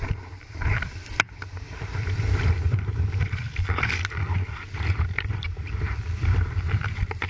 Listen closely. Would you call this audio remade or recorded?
remade